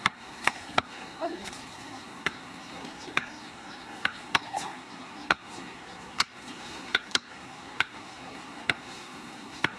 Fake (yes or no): yes